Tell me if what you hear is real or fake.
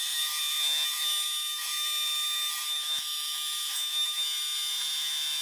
fake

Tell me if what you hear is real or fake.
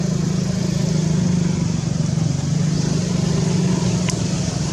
real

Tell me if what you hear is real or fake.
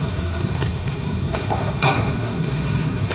fake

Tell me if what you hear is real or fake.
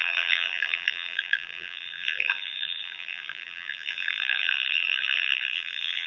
fake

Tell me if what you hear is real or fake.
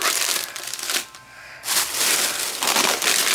real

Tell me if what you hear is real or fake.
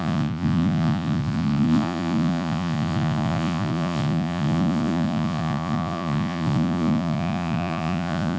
fake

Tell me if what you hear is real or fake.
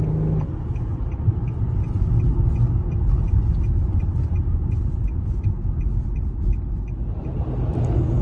real